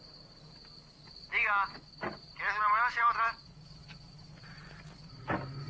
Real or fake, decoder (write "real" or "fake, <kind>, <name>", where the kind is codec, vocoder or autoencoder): real